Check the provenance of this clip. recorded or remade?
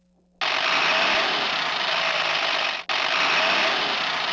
recorded